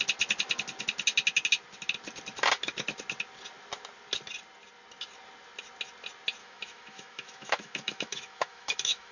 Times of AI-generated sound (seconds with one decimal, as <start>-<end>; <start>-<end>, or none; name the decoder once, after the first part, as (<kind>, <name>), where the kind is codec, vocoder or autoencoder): 6.4-9.1 (autoencoder, DAC-VAE)